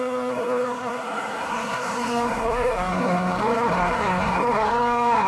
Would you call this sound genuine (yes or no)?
no